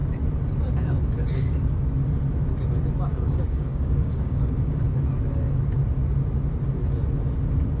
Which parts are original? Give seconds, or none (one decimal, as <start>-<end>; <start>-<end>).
0.0-3.1; 4.8-7.8